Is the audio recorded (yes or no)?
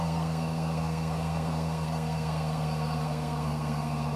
no